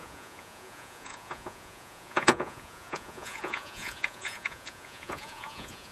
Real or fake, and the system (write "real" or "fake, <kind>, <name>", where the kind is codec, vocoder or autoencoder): fake, vocoder, Vocos